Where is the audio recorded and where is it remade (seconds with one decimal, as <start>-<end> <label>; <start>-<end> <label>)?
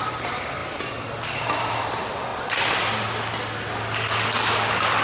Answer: 0.0-2.3 recorded; 2.3-2.9 remade; 2.9-5.0 recorded